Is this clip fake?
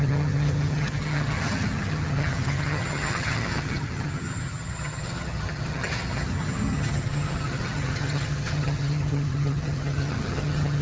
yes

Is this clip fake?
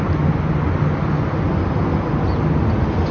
no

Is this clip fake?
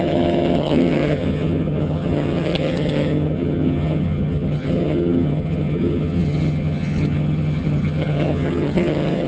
yes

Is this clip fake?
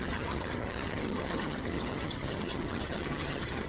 yes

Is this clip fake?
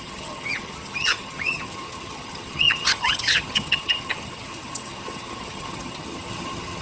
yes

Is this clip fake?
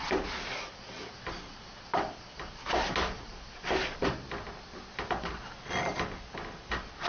no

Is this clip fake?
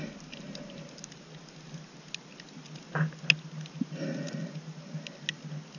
no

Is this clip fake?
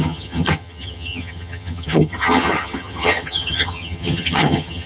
yes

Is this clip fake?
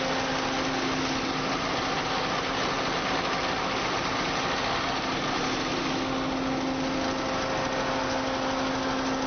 no